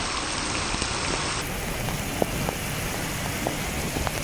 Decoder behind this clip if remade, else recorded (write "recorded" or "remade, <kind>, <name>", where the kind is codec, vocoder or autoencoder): recorded